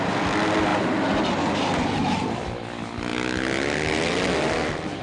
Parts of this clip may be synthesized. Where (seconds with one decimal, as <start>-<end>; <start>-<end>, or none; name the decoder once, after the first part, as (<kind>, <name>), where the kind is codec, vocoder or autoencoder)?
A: none